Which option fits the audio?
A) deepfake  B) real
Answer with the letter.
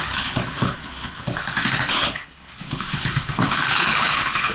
A